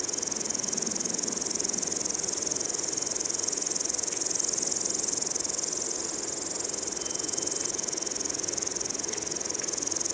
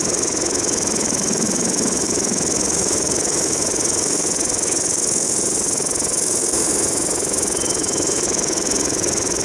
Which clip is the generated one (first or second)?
second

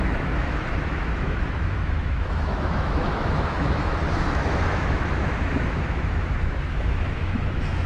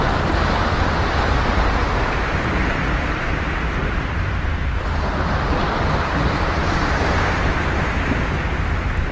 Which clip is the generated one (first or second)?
first